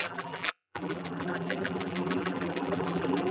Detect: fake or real fake